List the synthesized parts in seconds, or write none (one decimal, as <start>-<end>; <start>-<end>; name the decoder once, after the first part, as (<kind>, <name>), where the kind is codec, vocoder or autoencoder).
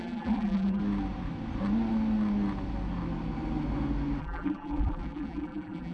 0.0-0.8 (vocoder, BigVGAN v2); 4.2-5.9